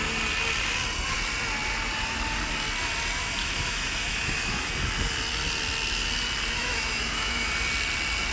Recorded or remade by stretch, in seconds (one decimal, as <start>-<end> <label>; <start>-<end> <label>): 0.0-3.4 recorded; 3.4-4.7 remade; 4.7-6.6 recorded; 6.6-7.5 remade; 7.5-8.3 recorded